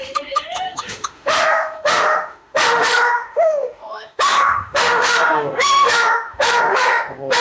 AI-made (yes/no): yes